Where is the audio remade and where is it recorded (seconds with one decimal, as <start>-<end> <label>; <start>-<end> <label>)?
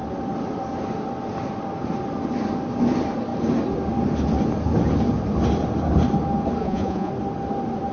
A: 0.0-6.6 recorded; 6.6-7.1 remade; 7.1-7.9 recorded